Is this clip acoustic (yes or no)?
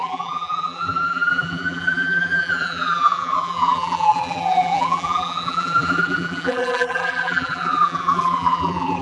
no